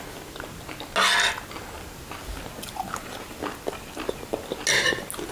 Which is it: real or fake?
real